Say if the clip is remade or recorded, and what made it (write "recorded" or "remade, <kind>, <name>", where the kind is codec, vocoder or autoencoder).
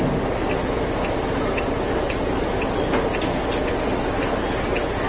recorded